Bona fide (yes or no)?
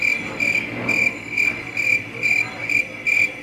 yes